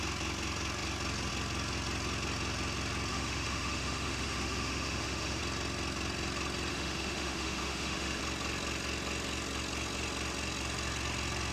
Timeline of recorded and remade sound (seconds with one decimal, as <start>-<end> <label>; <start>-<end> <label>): 0.0-3.1 recorded; 3.1-5.4 remade; 5.4-6.7 recorded; 6.7-8.2 remade; 8.2-11.5 recorded